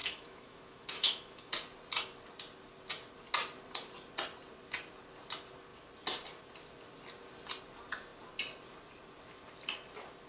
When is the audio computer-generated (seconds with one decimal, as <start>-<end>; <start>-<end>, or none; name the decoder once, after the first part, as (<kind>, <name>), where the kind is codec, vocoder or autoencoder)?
0.0-1.5 (autoencoder, DAC-VAE)